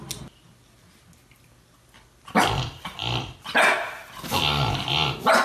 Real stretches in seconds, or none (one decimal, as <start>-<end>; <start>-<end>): 0.0-5.4